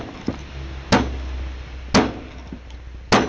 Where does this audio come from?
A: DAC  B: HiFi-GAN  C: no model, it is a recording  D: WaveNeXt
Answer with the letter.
C